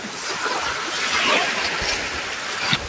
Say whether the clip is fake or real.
real